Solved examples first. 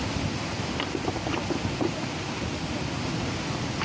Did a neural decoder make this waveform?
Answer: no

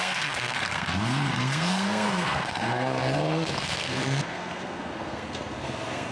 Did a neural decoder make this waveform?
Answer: yes